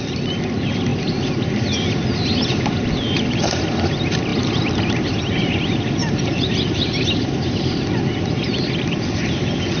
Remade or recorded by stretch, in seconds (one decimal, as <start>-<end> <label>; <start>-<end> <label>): 0.0-6.0 recorded; 6.0-7.8 remade; 7.8-9.8 recorded